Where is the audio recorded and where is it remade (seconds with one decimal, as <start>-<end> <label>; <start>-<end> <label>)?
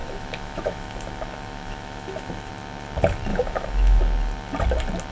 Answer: 0.0-2.5 remade; 2.5-3.3 recorded; 3.3-4.0 remade; 4.0-5.1 recorded